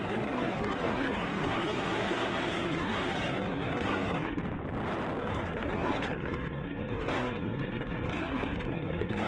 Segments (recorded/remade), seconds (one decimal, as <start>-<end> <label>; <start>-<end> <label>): 0.0-4.4 remade; 4.4-5.2 recorded; 5.2-9.3 remade